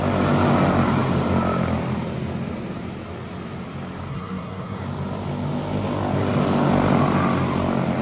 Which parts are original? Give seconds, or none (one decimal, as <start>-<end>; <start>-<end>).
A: 0.0-4.1; 4.8-8.0